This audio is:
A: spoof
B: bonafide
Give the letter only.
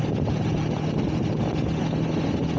B